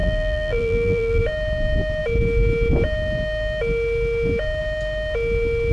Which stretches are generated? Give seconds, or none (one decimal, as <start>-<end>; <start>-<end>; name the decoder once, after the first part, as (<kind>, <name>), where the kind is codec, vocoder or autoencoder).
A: 0.0-1.2 (vocoder, BigVGAN v2)